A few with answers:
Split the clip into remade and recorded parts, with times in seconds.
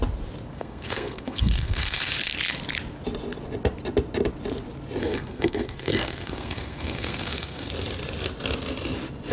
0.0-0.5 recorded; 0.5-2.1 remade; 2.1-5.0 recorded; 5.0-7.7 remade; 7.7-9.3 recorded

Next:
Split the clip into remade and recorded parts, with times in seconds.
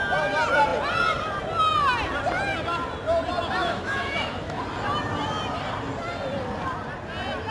0.0-3.6 recorded; 3.6-4.6 remade; 4.6-7.5 recorded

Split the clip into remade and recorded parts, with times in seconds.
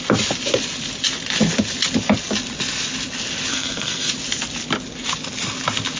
0.0-3.5 recorded; 3.5-4.1 remade; 4.1-6.0 recorded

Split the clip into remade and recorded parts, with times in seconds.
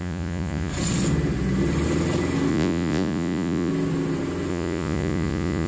0.0-0.7 remade; 0.7-2.5 recorded; 2.5-3.7 remade; 3.7-4.5 recorded; 4.5-5.7 remade